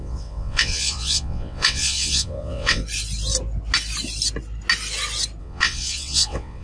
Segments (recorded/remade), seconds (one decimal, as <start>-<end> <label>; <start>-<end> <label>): 0.0-2.8 remade; 2.8-5.4 recorded; 5.4-6.6 remade